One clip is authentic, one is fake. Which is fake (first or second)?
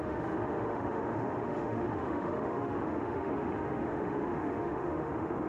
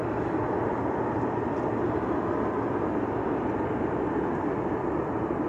first